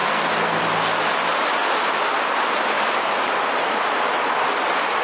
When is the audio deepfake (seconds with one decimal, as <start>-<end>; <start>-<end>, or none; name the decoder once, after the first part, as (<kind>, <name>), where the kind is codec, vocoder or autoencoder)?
0.0-0.6 (codec, SNAC)